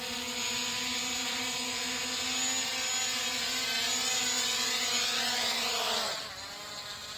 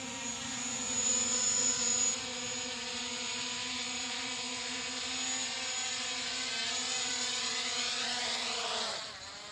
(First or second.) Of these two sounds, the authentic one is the first